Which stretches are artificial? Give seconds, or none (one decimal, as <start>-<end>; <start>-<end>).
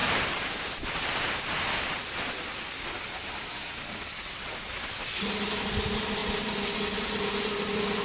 none